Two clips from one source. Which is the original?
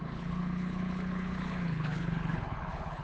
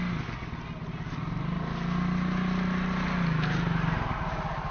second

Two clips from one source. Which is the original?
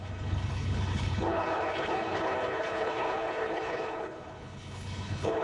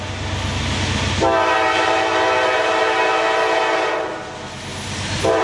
second